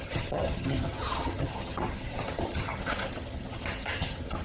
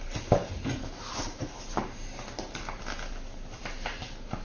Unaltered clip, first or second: second